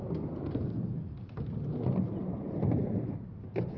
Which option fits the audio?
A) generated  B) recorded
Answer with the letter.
B